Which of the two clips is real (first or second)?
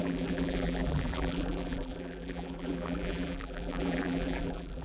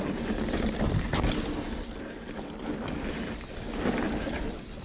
second